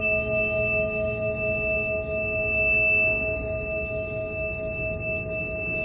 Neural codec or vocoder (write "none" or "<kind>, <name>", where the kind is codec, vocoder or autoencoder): none